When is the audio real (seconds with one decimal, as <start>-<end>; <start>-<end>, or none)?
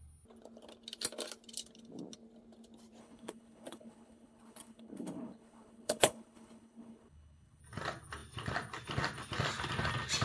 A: 0.0-3.0; 7.6-10.2